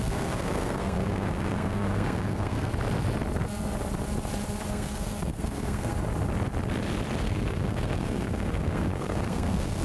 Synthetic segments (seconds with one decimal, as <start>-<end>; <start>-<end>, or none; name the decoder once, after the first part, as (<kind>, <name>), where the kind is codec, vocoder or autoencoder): 0.0-2.7 (codec, SNAC); 4.7-5.9; 7.2-9.8